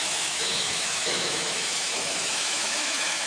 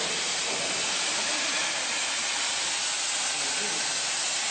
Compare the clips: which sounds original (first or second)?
second